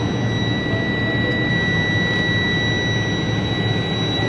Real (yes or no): yes